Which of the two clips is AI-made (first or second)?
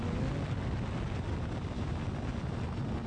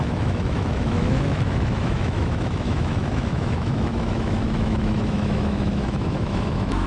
second